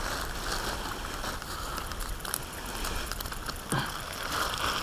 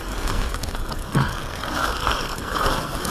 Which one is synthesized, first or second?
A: second